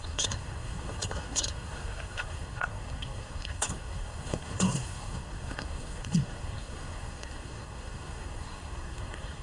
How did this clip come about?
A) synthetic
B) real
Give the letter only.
A